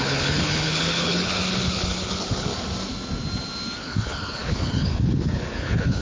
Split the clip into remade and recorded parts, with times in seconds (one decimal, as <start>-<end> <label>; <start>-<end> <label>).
0.0-2.5 remade; 2.5-3.8 recorded; 3.8-6.0 remade